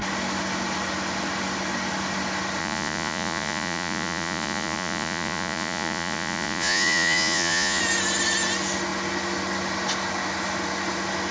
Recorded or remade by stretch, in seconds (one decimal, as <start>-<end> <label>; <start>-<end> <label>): 0.0-2.6 recorded; 2.6-7.8 remade; 7.8-11.3 recorded